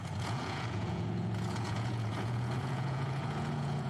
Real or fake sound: fake